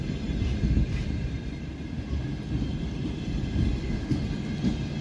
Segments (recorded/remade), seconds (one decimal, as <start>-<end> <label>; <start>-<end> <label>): 0.0-1.0 recorded; 1.0-3.6 remade; 3.6-5.0 recorded